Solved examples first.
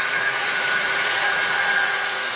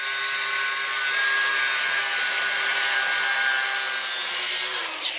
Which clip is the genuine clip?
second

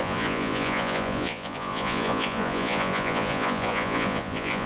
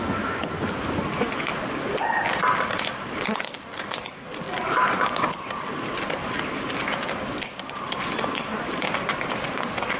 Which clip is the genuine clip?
second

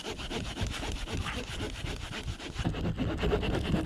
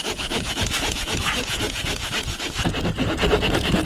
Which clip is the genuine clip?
first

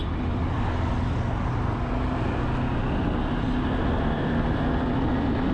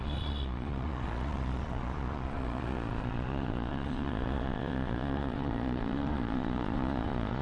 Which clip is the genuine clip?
first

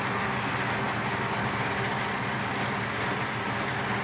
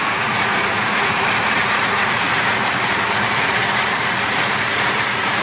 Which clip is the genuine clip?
first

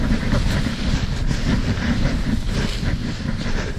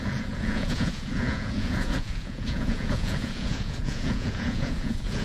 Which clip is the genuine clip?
first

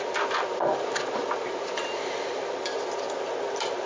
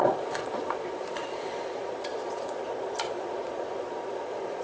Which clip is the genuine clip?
first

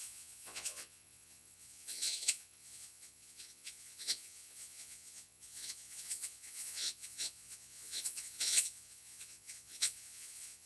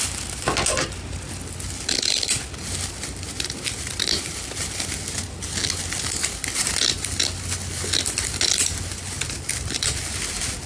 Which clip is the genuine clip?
second